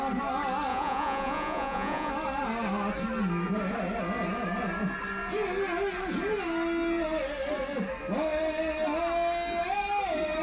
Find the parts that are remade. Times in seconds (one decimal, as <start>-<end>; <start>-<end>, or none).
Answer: 0.7-2.1